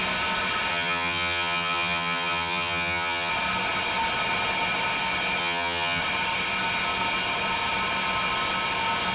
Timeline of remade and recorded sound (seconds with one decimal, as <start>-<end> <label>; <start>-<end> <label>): 0.0-0.7 recorded; 0.7-3.3 remade; 3.3-5.4 recorded; 5.4-6.0 remade; 6.0-9.1 recorded